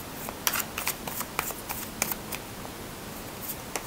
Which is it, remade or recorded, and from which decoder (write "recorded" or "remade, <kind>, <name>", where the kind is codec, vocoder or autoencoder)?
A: recorded